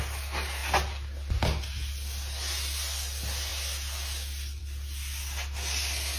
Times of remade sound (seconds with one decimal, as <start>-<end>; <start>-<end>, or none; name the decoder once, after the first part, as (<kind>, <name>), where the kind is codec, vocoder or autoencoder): none